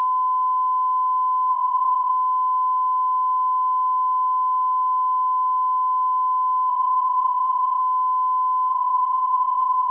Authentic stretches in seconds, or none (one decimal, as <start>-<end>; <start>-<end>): 0.0-1.5; 2.1-6.7; 7.8-8.7